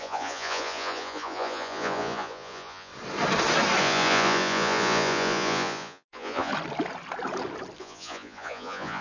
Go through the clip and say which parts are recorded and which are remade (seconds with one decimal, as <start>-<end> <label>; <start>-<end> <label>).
0.0-2.9 remade; 2.9-3.8 recorded; 3.8-6.5 remade; 6.5-7.8 recorded; 7.8-9.0 remade